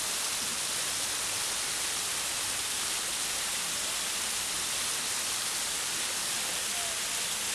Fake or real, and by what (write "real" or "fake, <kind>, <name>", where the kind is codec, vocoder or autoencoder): real